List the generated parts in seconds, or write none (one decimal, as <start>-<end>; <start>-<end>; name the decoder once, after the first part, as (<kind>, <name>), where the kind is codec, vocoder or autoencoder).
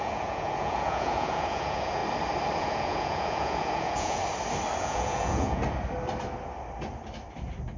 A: 0.0-2.0 (vocoder, Vocos); 2.6-4.2; 4.8-5.6